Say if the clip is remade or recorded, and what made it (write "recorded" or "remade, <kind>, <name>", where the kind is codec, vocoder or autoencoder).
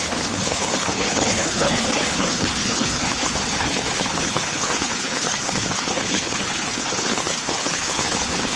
remade, codec, HILCodec